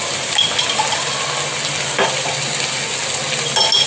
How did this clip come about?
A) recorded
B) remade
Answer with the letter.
A